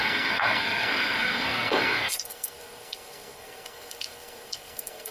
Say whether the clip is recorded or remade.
remade